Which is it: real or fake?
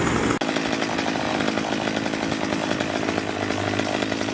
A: real